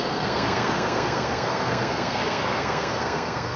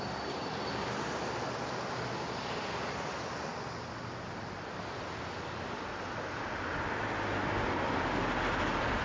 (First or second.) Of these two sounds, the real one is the second